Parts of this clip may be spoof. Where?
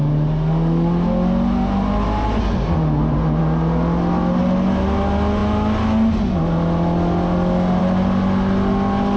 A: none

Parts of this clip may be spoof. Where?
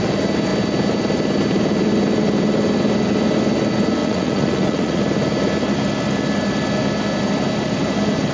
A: 4.0-5.0 (vocoder, Vocos)